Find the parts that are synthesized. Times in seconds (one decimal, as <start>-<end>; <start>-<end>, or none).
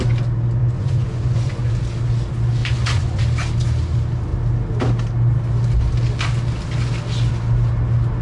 0.6-1.7; 2.6-3.2